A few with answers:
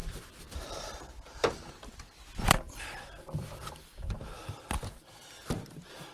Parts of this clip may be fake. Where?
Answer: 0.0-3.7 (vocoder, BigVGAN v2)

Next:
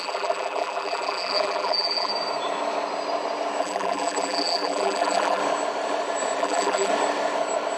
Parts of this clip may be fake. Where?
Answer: 0.0-2.1 (vocoder, BigVGAN v2); 3.6-5.4; 6.4-6.9

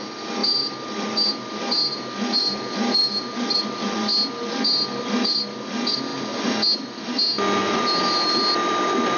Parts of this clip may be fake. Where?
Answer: 0.0-6.1 (vocoder, BigVGAN v2); 7.6-9.2

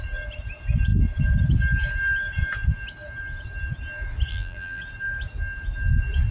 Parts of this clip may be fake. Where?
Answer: 4.3-4.8 (vocoder, BigVGAN v2)

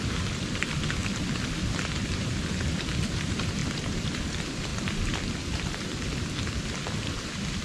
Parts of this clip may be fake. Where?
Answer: 0.0-4.7 (vocoder, BigVGAN v2)

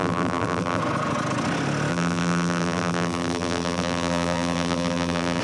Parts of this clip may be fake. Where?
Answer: 0.0-0.8 (vocoder, BigVGAN v2); 1.9-5.4